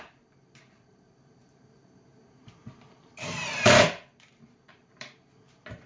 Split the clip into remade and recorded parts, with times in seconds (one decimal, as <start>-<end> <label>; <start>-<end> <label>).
0.0-5.9 remade